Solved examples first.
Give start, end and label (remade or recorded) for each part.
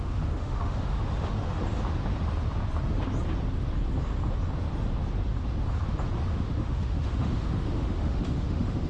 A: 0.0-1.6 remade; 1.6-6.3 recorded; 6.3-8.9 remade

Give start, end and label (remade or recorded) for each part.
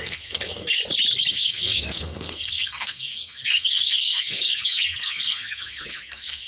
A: 0.0-0.8 remade; 0.8-1.3 recorded; 1.3-6.5 remade